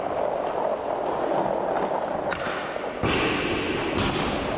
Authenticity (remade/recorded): recorded